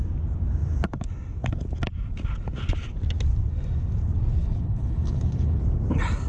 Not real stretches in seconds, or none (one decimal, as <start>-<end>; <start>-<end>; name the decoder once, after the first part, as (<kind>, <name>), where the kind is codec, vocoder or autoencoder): 4.4-5.6 (codec, HILCodec)

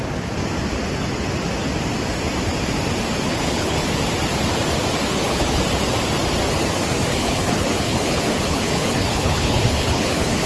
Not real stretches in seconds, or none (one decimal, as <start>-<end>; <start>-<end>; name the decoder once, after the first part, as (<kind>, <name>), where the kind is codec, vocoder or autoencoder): 3.3-3.9 (codec, HILCodec); 5.1-5.6; 7.1-10.5

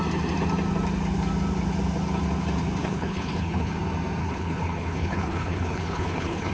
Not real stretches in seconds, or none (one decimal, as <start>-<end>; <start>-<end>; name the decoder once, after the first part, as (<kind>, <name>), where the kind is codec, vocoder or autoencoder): 2.8-3.7 (codec, HILCodec); 4.2-6.5